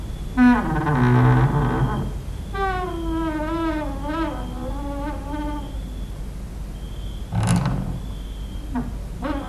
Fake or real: real